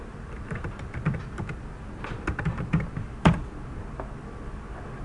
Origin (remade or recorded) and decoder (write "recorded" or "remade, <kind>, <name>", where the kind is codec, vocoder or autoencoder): remade, vocoder, BigVGAN v2